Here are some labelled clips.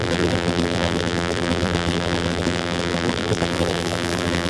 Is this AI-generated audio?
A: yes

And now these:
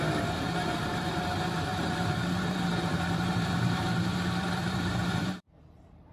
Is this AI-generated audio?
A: yes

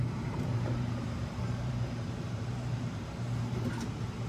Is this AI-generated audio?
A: yes